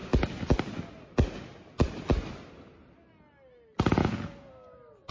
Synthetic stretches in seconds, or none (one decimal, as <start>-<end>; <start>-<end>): 4.0-4.5